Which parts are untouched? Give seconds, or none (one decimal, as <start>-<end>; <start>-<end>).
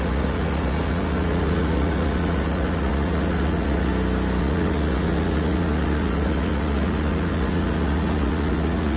3.9-4.4